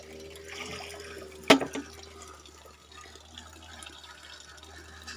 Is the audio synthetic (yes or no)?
no